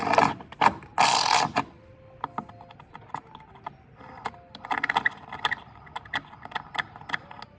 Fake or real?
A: real